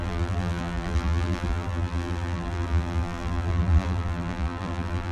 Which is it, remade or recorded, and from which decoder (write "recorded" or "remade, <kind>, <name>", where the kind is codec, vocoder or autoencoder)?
remade, vocoder, BigVGAN v2